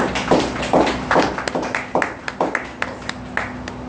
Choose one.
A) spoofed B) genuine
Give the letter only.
B